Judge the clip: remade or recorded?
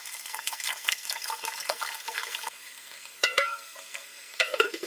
remade